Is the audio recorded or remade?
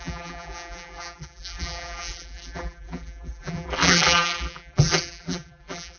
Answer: remade